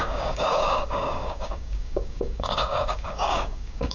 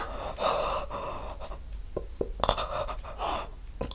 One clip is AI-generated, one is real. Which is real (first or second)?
second